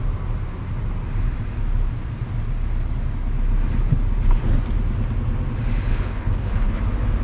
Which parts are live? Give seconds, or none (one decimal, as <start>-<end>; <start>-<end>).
0.0-5.9; 6.8-7.2